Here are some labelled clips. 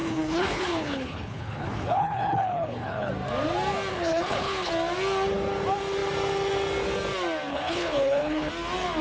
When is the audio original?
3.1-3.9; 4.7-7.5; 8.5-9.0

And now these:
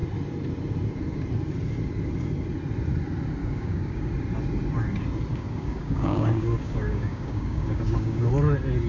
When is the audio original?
0.0-3.4; 4.1-5.3; 8.3-8.9

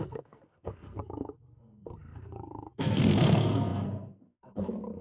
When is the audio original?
none

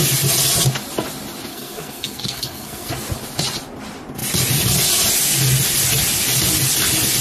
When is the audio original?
0.0-1.5; 2.9-7.2

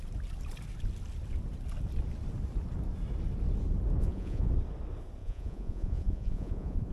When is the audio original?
0.0-4.0; 4.5-5.2

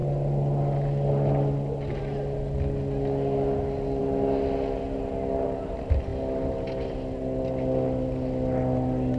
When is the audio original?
0.0-9.2

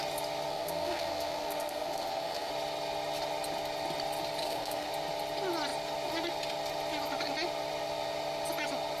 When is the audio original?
0.0-0.5; 2.5-4.4; 4.9-9.0